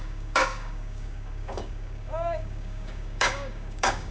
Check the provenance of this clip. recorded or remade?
remade